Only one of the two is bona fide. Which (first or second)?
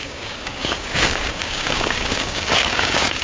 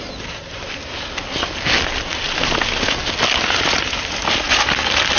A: second